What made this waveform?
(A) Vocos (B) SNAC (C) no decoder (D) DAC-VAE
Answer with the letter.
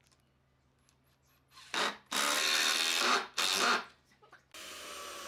C